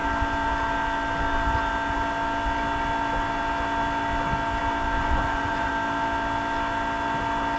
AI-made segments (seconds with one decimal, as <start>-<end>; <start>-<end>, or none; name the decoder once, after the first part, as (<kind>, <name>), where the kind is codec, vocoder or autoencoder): 5.0-5.7 (vocoder, Vocos)